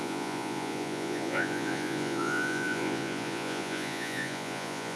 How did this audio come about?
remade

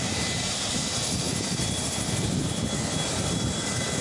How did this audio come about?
remade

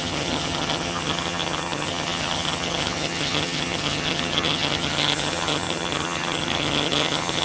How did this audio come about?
remade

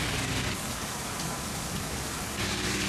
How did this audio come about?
remade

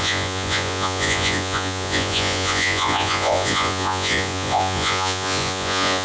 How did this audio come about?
remade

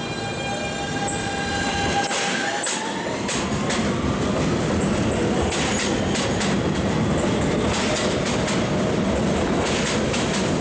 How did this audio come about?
recorded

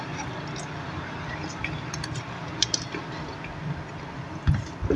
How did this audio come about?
recorded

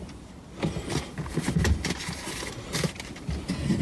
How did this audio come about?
recorded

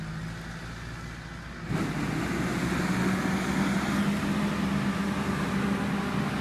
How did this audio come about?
recorded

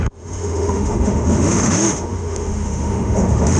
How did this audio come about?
remade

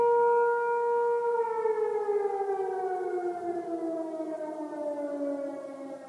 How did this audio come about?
recorded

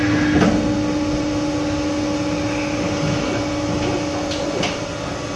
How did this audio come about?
recorded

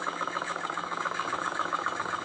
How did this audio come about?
remade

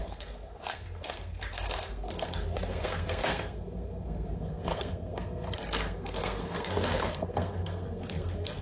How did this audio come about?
remade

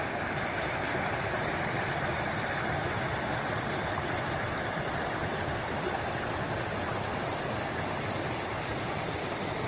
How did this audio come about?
recorded